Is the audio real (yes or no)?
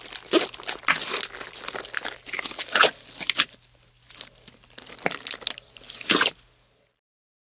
yes